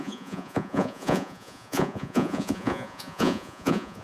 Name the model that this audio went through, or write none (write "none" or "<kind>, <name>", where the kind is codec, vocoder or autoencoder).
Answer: vocoder, Vocos